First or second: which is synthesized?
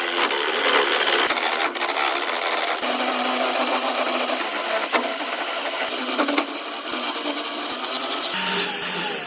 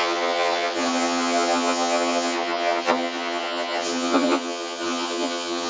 second